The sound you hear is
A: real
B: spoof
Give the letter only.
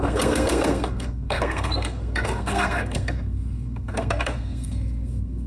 B